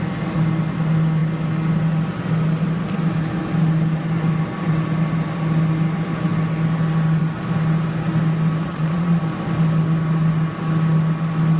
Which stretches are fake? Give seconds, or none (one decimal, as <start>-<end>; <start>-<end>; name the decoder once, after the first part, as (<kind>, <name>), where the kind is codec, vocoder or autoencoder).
8.7-9.2 (vocoder, Vocos)